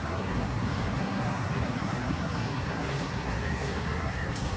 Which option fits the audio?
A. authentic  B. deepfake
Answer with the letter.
B